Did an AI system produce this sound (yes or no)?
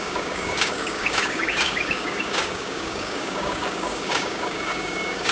yes